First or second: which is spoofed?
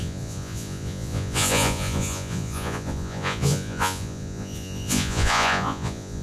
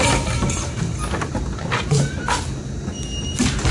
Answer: first